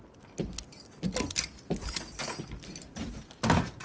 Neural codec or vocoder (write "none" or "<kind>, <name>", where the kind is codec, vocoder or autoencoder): none